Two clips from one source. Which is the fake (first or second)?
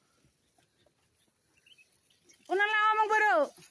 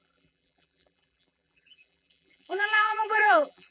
second